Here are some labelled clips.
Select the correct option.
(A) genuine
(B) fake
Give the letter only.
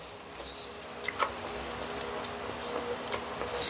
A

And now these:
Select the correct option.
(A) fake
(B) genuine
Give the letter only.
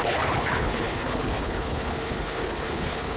A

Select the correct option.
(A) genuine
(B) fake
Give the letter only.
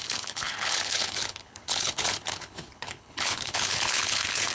B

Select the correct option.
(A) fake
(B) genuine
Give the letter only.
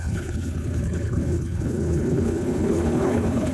A